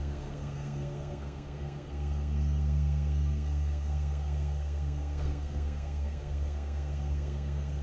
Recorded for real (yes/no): no